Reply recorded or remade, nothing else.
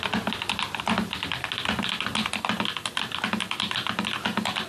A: recorded